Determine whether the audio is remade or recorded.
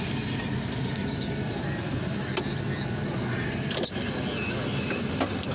recorded